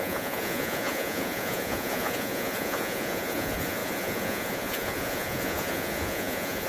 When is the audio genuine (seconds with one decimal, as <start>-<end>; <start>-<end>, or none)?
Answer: none